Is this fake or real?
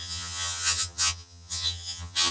fake